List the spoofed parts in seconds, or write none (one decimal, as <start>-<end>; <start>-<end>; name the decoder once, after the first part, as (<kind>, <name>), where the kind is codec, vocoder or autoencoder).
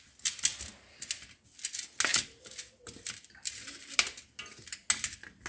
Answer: none